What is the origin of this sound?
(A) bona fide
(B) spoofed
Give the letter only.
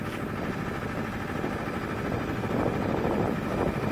A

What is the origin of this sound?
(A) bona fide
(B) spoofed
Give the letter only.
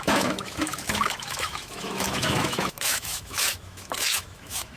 B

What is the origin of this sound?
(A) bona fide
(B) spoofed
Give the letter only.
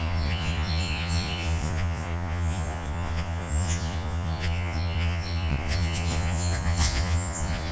B